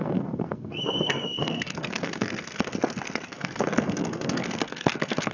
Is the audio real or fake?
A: fake